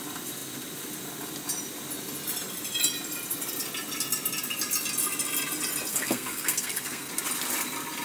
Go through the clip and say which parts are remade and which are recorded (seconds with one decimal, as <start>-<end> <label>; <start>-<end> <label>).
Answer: 0.0-5.9 recorded; 5.9-7.1 remade; 7.1-8.0 recorded